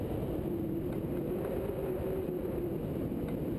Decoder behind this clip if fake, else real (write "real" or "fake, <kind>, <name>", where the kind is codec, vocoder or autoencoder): real